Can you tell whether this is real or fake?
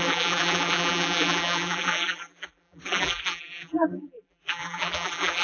fake